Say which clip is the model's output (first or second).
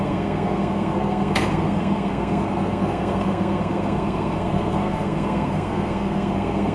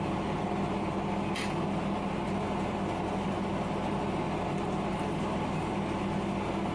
first